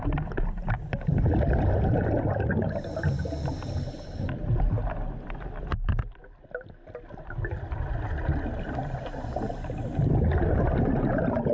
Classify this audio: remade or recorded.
recorded